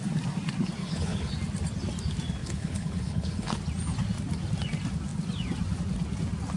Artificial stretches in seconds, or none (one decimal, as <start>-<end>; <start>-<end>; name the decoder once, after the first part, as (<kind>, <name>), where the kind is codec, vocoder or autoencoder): 0.8-1.3 (codec, HILCodec); 2.4-3.6